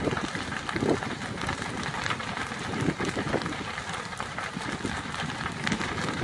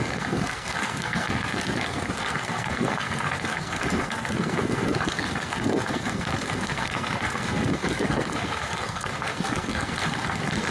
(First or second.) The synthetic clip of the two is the second